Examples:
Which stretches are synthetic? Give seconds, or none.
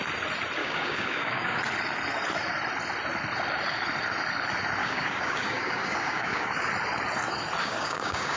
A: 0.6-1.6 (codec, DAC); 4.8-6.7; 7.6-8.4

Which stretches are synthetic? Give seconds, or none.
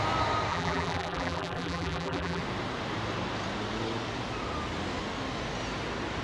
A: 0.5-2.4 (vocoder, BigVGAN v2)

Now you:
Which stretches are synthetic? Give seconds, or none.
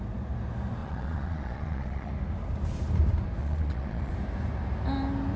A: 0.8-2.1 (vocoder, Vocos); 3.4-4.1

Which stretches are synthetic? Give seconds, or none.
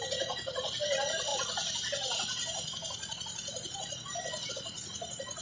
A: none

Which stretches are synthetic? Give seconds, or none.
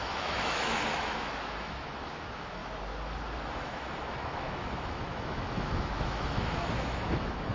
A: 0.0-2.6 (autoencoder, DAC-VAE); 3.5-7.5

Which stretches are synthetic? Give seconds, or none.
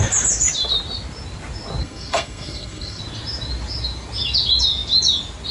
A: 1.8-3.0 (codec, SNAC)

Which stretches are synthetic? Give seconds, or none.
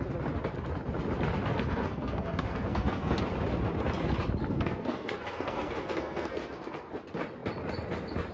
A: 1.5-3.2 (codec, SNAC); 4.4-6.9